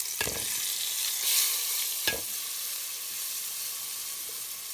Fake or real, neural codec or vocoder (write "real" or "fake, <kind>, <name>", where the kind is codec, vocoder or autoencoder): real